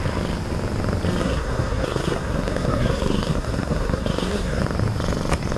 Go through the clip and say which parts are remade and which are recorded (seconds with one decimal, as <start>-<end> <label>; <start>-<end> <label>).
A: 0.0-1.2 recorded; 1.2-4.6 remade; 4.6-5.6 recorded

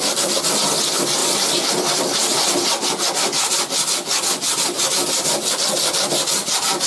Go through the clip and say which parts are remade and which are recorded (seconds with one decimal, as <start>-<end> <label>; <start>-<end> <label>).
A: 0.0-1.2 recorded; 1.2-1.7 remade; 1.7-6.9 recorded

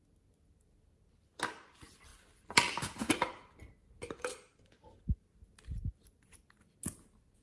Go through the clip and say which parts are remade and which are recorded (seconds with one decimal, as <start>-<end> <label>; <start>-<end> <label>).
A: 0.0-7.4 recorded

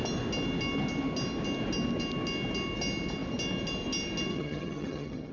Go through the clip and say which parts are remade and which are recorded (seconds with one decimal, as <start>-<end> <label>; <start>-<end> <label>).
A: 0.0-4.3 recorded; 4.3-5.3 remade

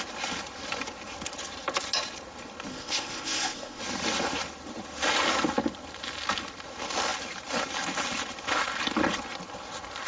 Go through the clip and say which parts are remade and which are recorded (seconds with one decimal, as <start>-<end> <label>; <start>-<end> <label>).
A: 0.0-2.7 recorded; 2.7-3.8 remade; 3.8-10.1 recorded